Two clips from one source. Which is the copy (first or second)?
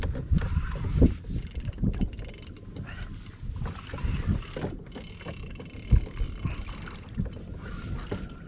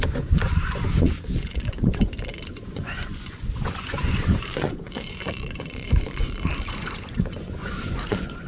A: second